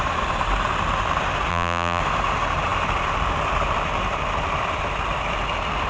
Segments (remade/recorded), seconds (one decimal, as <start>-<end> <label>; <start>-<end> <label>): 0.0-1.5 recorded; 1.5-2.0 remade; 2.0-5.9 recorded